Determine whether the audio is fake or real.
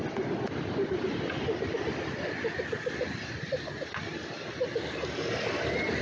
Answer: real